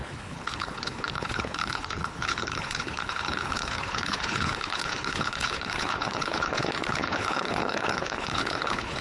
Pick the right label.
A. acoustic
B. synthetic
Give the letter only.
B